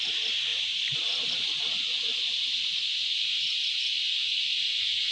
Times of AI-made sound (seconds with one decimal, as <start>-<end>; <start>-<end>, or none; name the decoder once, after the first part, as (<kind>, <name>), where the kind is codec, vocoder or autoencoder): none